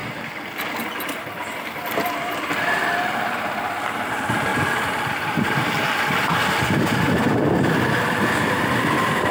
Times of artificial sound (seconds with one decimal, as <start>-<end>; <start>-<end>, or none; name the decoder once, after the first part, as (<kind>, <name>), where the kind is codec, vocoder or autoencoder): none